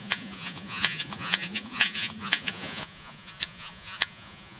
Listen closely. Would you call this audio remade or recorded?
remade